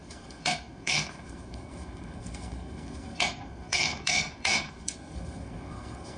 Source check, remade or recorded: remade